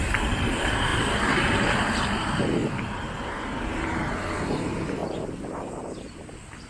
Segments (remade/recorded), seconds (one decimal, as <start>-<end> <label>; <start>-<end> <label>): 0.0-6.7 recorded